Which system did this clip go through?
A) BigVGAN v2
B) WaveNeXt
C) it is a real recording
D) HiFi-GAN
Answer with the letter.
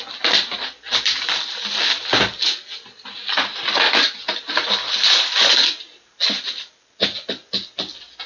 C